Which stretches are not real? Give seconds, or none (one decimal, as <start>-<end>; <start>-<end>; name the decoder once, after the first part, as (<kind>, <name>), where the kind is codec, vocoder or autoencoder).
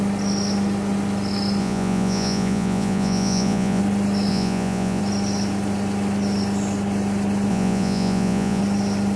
1.6-3.8 (vocoder, Vocos); 4.3-5.0; 7.5-8.6